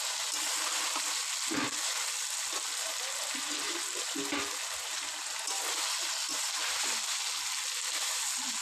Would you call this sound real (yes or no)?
yes